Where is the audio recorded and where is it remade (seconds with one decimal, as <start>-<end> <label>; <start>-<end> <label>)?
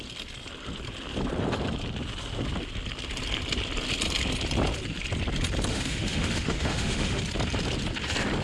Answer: 0.0-5.7 recorded; 5.7-7.2 remade; 7.2-8.4 recorded